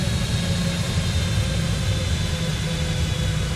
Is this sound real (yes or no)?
yes